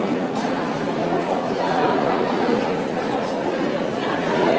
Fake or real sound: fake